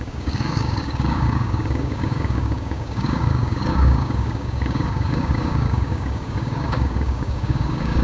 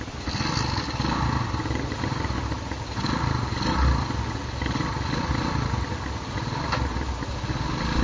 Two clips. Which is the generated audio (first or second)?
first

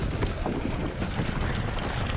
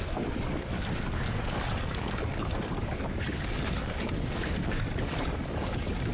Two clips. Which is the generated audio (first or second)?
second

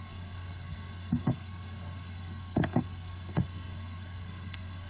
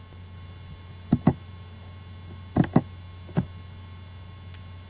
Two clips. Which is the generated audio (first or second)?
first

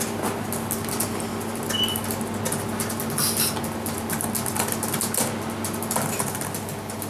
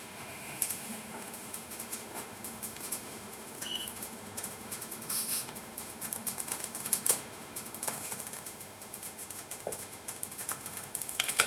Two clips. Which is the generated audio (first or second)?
second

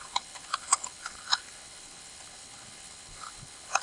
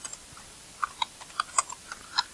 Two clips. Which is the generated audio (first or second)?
first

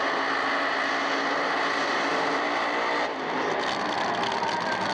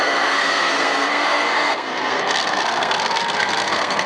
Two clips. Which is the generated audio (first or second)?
second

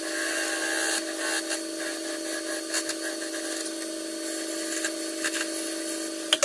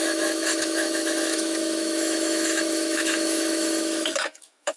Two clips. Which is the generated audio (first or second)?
second